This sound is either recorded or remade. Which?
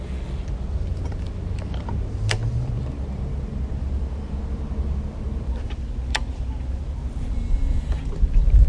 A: recorded